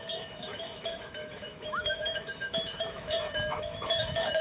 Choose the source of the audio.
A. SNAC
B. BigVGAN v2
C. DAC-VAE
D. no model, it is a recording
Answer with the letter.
C